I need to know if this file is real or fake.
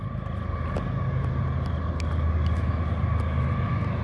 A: real